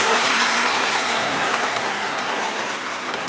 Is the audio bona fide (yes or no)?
no